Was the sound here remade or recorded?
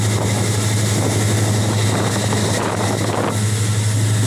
recorded